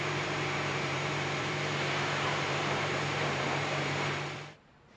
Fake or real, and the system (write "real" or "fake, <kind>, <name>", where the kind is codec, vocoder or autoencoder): fake, vocoder, BigVGAN v2